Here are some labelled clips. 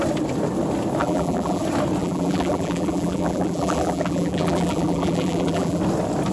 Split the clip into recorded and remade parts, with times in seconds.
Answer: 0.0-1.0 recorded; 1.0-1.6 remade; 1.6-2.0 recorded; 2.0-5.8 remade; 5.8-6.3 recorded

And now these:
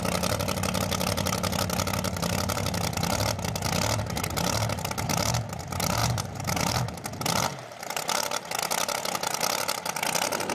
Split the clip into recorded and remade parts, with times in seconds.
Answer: 0.0-6.0 recorded; 6.0-6.8 remade; 6.8-7.5 recorded; 7.5-8.0 remade; 8.0-10.5 recorded

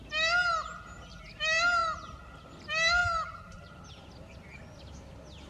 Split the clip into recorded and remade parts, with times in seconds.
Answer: 0.0-5.5 recorded